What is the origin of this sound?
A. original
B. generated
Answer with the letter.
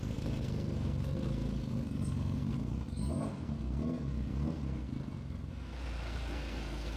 B